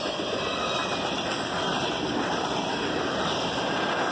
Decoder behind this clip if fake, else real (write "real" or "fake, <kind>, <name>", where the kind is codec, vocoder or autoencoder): fake, vocoder, BigVGAN v2